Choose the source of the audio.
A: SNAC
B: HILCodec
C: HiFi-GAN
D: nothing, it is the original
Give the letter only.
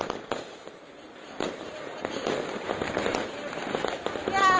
D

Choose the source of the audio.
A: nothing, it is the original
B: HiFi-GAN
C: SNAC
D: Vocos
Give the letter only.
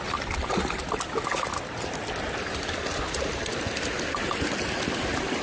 A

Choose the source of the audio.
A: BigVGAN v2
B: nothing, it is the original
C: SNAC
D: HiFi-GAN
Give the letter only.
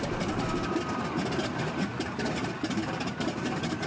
B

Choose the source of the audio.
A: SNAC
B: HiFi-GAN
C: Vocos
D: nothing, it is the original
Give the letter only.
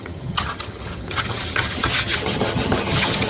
B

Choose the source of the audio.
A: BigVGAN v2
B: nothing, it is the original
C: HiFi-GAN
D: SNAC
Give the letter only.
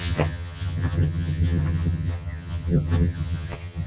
C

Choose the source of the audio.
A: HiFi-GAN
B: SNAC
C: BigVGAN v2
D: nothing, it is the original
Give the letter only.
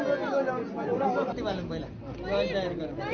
D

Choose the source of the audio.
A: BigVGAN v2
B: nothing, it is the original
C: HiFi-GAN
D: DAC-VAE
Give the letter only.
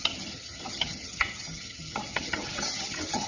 C